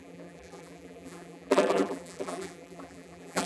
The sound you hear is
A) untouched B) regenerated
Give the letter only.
B